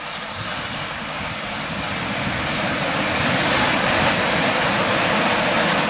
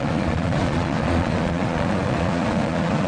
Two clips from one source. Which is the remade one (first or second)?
second